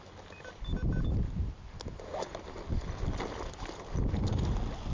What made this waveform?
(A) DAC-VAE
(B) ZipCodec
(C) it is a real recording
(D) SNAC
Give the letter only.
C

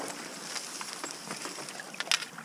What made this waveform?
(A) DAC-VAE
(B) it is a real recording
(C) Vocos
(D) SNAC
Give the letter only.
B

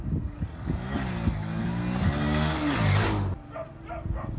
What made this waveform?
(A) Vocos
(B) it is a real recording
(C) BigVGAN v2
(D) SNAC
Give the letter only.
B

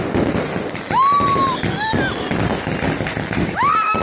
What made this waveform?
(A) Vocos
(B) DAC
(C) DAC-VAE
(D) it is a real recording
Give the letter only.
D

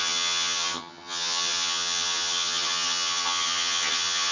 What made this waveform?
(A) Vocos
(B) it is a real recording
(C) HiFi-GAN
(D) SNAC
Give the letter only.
C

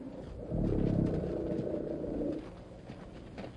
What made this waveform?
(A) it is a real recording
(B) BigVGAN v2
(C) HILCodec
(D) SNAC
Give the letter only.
A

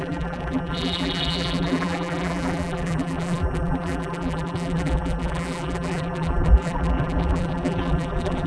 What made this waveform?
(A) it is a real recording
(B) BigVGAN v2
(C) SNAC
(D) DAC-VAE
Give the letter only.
B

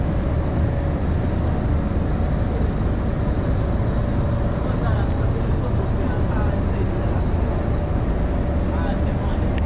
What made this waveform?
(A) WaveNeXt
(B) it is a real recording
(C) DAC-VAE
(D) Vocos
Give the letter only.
B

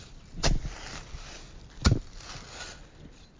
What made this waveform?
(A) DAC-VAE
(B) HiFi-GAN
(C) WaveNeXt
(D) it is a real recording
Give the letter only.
D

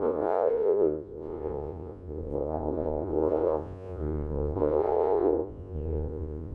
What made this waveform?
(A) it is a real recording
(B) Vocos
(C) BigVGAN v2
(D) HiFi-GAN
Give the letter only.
B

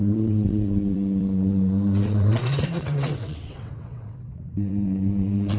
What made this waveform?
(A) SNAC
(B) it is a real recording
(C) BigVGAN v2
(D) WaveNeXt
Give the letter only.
D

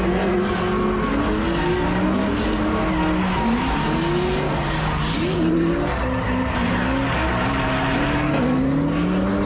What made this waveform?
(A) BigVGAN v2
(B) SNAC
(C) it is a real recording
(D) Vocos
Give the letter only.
C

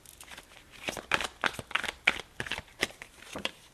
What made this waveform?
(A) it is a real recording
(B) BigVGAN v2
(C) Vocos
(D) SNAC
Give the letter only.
A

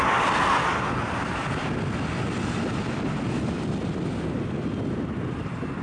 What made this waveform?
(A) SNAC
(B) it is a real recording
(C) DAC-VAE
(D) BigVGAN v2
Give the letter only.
B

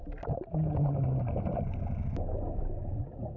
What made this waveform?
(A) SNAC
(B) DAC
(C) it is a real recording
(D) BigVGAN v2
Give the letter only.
C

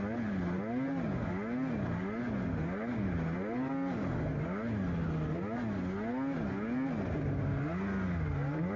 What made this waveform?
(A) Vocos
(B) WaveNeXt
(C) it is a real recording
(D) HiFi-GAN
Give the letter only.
C